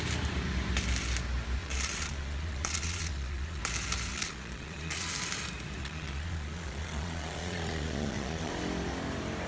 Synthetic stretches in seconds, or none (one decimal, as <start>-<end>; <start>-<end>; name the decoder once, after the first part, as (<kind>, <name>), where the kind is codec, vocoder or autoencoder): 1.6-3.6 (vocoder, Vocos); 4.1-5.1; 5.8-8.5